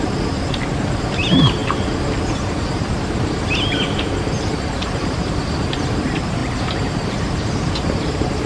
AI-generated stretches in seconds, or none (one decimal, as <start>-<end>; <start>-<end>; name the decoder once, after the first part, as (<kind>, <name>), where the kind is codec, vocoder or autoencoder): 0.0-1.6 (vocoder, BigVGAN v2); 2.7-8.5